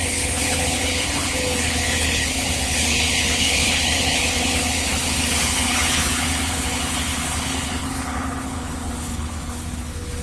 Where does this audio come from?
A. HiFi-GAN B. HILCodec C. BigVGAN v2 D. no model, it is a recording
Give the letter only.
B